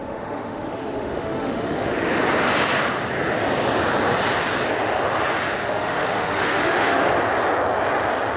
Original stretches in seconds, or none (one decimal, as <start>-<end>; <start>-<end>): 2.2-5.6; 7.2-8.4